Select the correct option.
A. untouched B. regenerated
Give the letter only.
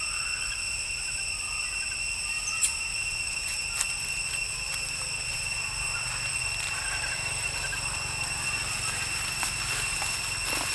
A